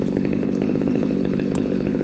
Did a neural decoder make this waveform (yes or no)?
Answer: yes